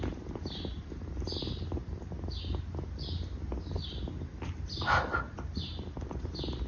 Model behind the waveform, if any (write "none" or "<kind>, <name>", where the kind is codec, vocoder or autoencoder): none